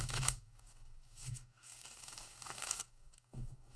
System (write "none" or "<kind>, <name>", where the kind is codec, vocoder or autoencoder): codec, DAC